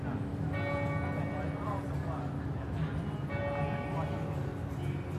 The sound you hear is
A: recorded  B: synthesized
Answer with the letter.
A